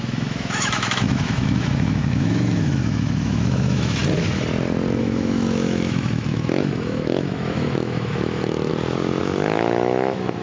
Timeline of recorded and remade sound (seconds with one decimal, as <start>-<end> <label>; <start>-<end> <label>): 0.0-4.0 remade; 4.0-5.0 recorded; 5.0-8.7 remade; 8.7-9.2 recorded; 9.2-10.4 remade

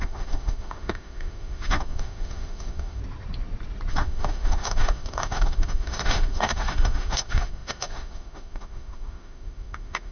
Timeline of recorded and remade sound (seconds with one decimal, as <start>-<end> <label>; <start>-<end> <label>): 0.0-3.0 remade; 3.0-3.9 recorded; 3.9-10.1 remade

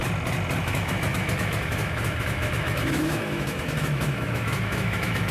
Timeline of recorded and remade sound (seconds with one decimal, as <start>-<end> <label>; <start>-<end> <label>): 0.0-0.6 recorded; 0.6-5.3 remade

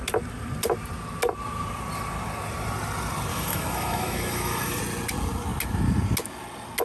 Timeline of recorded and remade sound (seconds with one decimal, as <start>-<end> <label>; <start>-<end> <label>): 0.0-3.3 recorded; 3.3-4.8 remade; 4.8-6.8 recorded

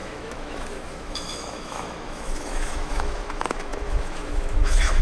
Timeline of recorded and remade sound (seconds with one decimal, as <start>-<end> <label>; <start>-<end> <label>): 0.0-5.0 remade

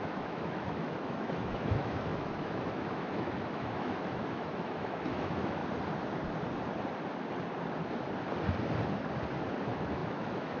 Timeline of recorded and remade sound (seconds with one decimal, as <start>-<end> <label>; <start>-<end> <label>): 0.0-5.6 remade; 5.6-9.6 recorded; 9.6-10.6 remade